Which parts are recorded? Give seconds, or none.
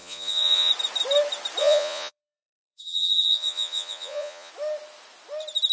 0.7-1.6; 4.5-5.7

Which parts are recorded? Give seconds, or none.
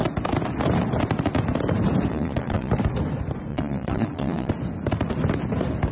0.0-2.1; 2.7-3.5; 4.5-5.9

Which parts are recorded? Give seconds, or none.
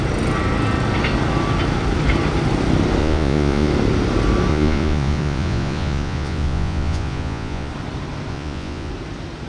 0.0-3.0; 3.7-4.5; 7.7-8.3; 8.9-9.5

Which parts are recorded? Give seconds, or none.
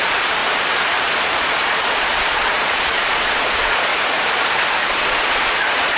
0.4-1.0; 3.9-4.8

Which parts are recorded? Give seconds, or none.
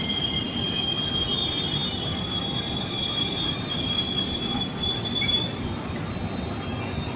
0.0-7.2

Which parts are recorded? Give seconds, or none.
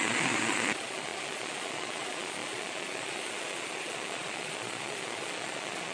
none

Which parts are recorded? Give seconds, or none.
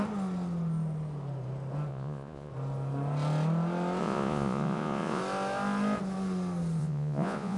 0.0-1.9; 2.5-4.0; 5.2-6.8